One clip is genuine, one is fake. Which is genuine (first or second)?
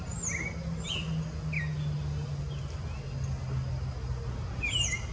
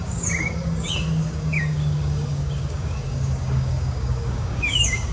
first